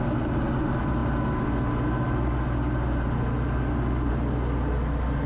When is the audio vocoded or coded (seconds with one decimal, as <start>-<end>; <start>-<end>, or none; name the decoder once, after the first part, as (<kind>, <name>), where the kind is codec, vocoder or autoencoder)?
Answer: none

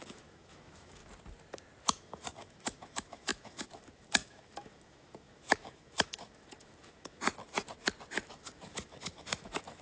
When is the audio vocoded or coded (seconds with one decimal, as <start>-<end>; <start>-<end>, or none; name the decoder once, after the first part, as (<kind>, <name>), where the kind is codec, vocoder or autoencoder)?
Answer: 0.0-1.0 (autoencoder, DAC-VAE); 1.8-7.2; 8.2-9.8